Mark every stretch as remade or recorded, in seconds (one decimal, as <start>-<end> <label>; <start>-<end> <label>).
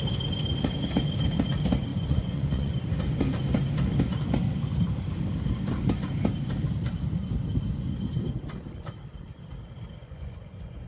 0.0-1.9 recorded; 1.9-2.7 remade; 2.7-10.0 recorded; 10.0-10.9 remade